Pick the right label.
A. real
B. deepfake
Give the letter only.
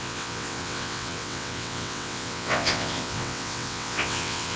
B